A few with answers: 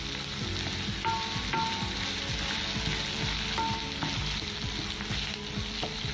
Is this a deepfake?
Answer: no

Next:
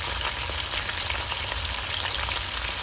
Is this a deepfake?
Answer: no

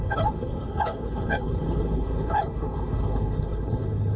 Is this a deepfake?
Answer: yes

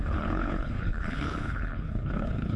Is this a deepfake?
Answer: yes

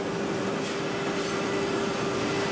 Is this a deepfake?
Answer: no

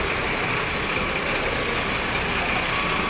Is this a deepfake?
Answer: no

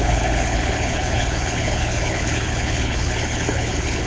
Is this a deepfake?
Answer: yes